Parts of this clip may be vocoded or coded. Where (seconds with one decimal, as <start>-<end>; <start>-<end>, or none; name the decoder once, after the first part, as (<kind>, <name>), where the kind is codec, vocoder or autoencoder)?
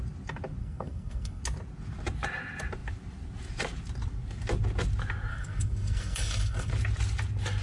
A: 0.6-1.4 (codec, SNAC); 5.3-6.7